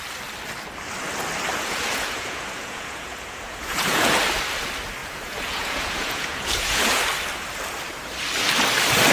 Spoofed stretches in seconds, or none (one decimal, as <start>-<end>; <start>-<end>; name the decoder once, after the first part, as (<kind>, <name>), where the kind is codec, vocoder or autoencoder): 1.5-4.1 (vocoder, Vocos); 5.0-7.0